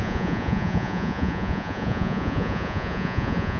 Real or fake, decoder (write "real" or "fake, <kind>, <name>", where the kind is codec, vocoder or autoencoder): fake, vocoder, Vocos